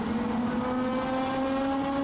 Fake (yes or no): no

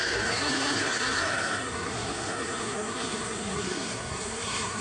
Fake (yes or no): yes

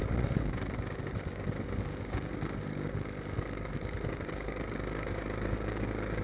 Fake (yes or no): yes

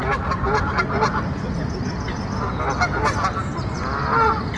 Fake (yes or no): no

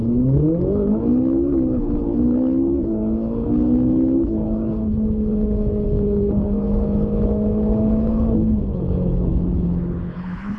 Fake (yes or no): yes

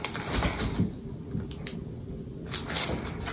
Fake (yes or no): no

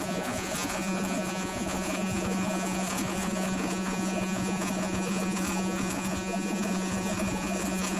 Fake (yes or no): yes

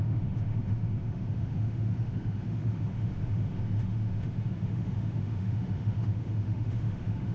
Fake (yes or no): yes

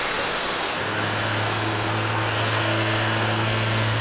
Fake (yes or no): yes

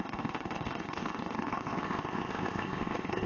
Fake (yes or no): yes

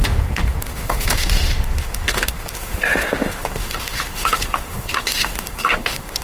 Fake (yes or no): yes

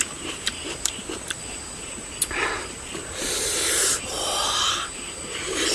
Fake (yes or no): yes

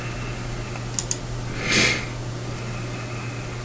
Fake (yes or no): no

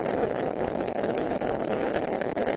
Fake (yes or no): yes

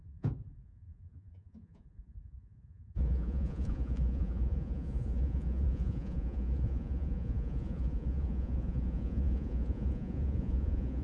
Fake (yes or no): yes